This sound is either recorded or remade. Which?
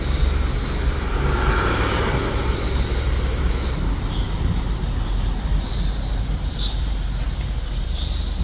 remade